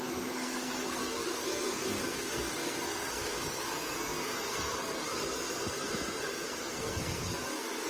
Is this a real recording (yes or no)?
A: no